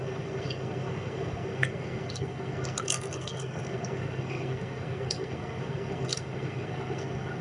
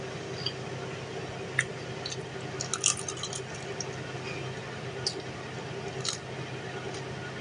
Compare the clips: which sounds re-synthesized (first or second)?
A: first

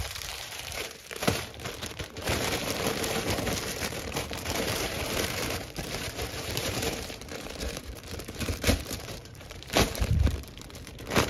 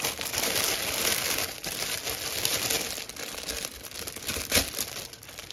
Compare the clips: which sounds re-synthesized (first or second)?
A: first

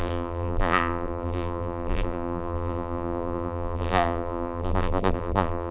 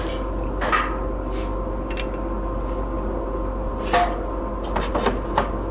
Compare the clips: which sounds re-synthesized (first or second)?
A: first